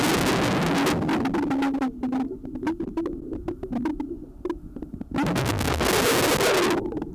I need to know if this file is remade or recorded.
recorded